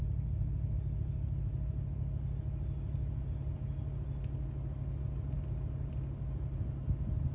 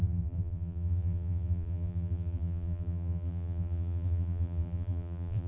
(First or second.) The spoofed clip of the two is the second